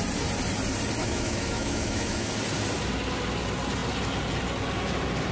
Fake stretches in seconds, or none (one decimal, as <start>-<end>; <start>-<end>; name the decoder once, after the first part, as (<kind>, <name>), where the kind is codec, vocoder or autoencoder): 1.0-2.3 (autoencoder, DAC-VAE)